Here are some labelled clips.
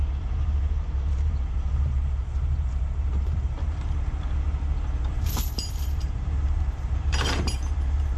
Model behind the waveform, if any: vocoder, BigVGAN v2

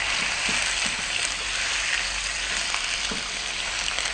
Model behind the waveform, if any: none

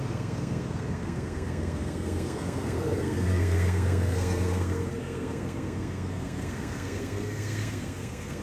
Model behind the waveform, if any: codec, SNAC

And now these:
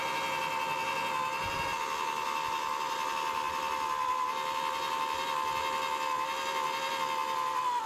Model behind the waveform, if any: none